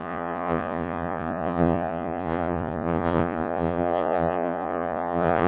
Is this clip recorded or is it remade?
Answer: remade